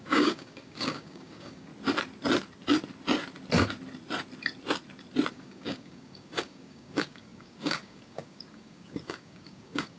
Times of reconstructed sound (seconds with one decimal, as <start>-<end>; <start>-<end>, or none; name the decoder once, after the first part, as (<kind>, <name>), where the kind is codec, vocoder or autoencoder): 0.0-1.7 (codec, DAC); 5.3-10.0